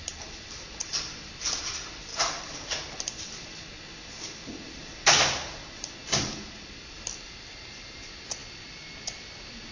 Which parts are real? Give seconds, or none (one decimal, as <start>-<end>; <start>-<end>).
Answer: none